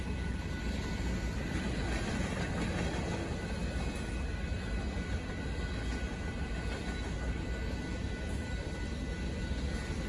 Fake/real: real